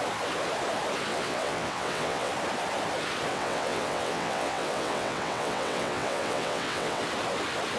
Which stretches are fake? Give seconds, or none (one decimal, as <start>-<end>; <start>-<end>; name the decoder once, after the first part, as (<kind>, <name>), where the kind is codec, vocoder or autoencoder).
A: 1.1-2.3 (vocoder, WaveNeXt); 3.3-7.0